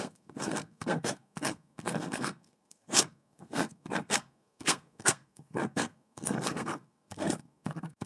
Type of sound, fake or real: fake